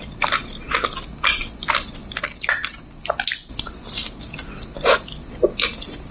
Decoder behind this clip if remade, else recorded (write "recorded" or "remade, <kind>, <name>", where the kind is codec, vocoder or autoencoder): recorded